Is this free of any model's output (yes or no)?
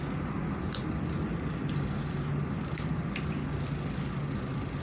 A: yes